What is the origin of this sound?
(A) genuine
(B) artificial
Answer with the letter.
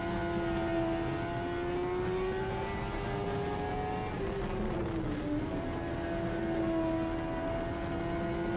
A